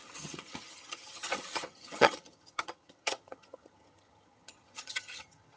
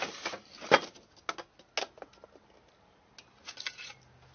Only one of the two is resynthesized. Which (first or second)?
first